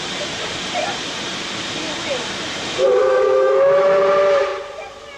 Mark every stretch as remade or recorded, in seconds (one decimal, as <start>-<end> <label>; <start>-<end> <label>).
0.0-3.0 recorded; 3.0-4.0 remade; 4.0-5.2 recorded